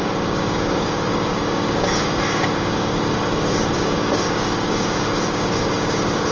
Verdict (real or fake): fake